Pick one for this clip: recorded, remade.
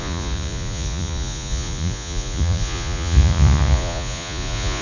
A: remade